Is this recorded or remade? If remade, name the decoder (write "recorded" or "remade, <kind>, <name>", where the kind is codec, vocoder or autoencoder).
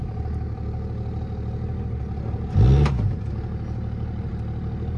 recorded